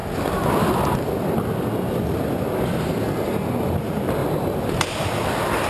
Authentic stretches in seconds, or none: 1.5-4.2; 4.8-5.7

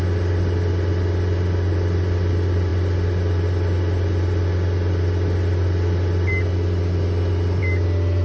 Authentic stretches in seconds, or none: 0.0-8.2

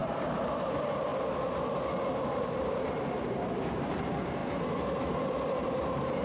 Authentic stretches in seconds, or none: 1.1-2.4; 4.4-5.1

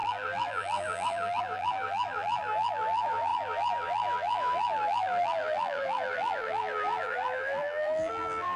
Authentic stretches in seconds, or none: none

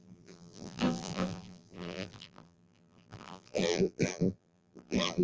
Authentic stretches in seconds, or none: none

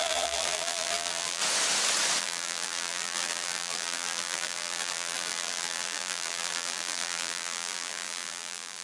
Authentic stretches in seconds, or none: 1.4-2.2

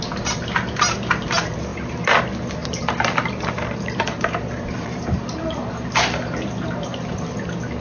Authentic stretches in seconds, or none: 0.0-1.7; 2.2-2.6; 7.3-7.8